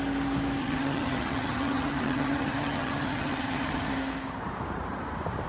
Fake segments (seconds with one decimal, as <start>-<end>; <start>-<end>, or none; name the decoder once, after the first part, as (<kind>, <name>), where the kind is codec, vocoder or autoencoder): 0.6-3.9 (vocoder, HiFi-GAN)